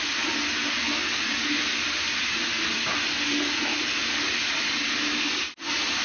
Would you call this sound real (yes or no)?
yes